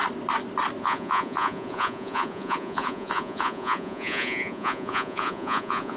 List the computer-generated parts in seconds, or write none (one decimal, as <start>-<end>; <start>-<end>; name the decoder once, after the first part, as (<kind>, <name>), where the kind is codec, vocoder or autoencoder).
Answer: 0.8-6.0 (vocoder, Vocos)